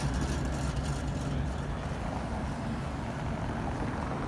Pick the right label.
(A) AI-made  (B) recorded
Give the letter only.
B